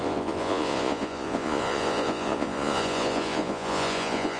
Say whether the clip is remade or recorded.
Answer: remade